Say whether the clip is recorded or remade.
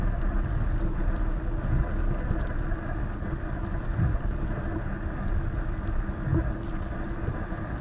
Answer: recorded